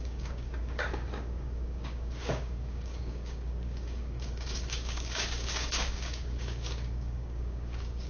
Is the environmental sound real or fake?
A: fake